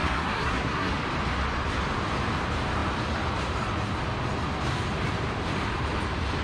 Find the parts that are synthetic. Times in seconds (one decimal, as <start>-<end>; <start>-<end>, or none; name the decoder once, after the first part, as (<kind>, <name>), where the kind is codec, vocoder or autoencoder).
0.0-0.9 (codec, SNAC)